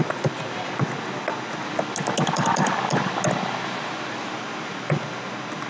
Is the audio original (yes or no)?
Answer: yes